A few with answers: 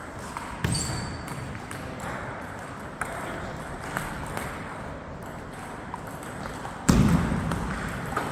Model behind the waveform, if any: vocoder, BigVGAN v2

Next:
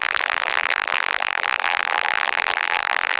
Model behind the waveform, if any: vocoder, BigVGAN v2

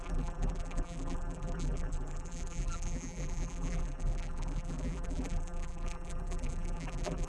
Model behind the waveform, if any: vocoder, BigVGAN v2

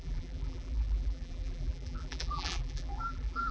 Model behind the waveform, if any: vocoder, BigVGAN v2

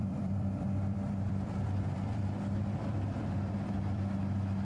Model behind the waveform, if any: vocoder, BigVGAN v2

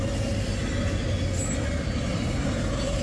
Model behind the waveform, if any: none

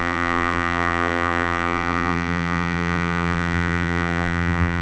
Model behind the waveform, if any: vocoder, BigVGAN v2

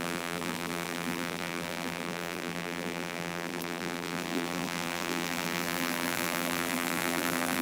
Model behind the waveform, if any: vocoder, BigVGAN v2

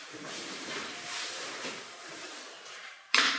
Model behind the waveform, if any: vocoder, BigVGAN v2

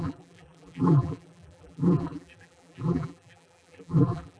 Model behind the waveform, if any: vocoder, BigVGAN v2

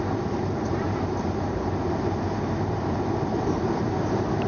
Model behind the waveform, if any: vocoder, BigVGAN v2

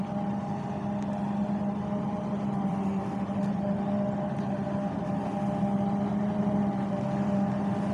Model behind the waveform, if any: none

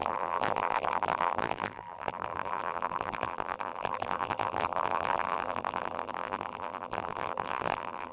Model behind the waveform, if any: vocoder, BigVGAN v2